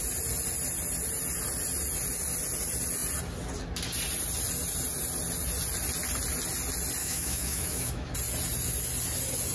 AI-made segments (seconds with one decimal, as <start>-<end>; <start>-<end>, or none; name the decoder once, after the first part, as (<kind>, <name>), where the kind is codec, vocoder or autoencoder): 7.0-8.1 (autoencoder, DAC-VAE)